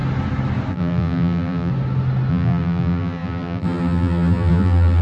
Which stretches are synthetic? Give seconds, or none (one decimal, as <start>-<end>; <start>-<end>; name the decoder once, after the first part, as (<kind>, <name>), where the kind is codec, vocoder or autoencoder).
0.7-1.7 (vocoder, BigVGAN v2); 2.3-5.0